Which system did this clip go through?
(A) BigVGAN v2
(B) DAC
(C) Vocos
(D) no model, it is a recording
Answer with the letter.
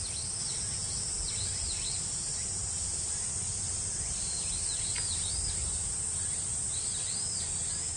D